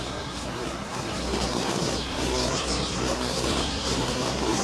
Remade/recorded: remade